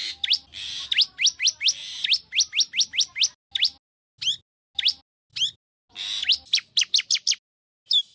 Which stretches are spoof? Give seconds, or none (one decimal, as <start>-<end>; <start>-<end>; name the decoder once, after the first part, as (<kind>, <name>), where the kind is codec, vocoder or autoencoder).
none